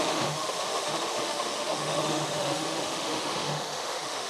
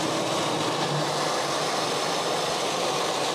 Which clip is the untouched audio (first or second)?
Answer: second